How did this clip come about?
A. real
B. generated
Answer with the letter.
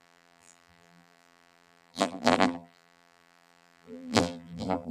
B